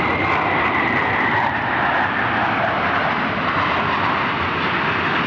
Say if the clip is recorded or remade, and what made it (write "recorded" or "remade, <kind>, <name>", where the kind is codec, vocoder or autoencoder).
recorded